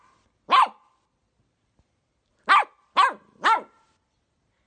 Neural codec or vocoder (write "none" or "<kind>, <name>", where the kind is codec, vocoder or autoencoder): none